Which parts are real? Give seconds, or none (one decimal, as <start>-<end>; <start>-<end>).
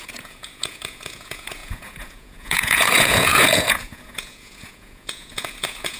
none